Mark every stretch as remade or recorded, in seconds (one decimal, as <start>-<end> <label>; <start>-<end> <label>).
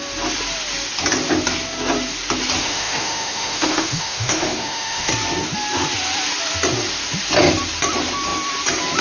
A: 0.0-2.6 recorded; 2.6-5.1 remade; 5.1-9.0 recorded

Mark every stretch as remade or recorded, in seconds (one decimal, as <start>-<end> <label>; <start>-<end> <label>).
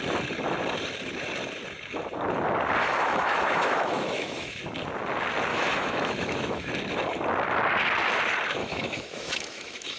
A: 0.0-2.8 recorded; 2.8-4.6 remade; 4.6-5.5 recorded; 5.5-6.7 remade; 6.7-8.6 recorded; 8.6-10.0 remade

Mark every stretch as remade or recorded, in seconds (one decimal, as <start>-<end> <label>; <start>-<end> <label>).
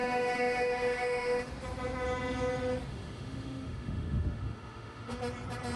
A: 0.0-1.5 remade; 1.5-2.9 recorded; 2.9-5.2 remade; 5.2-5.8 recorded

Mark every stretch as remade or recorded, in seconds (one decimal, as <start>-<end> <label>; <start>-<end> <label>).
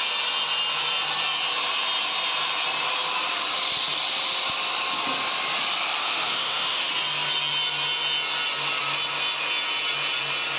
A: 0.0-6.0 recorded; 6.0-6.9 remade; 6.9-10.6 recorded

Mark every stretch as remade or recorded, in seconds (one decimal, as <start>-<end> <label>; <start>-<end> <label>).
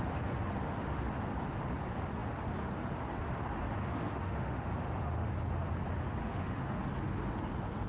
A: 0.0-0.6 recorded; 0.6-1.1 remade; 1.1-3.8 recorded; 3.8-5.3 remade; 5.3-6.2 recorded; 6.2-6.8 remade; 6.8-7.9 recorded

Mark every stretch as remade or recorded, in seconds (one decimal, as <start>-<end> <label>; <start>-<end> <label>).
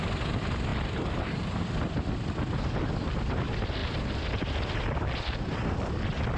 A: 0.0-6.4 recorded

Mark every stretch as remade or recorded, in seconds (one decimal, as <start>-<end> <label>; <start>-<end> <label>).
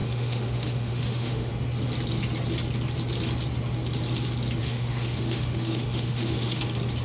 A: 0.0-1.5 remade; 1.5-4.6 recorded; 4.6-6.6 remade; 6.6-7.0 recorded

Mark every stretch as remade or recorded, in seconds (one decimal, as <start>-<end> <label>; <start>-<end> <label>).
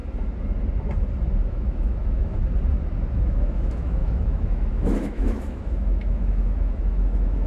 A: 0.0-1.5 recorded; 1.5-2.4 remade; 2.4-3.1 recorded; 3.1-7.5 remade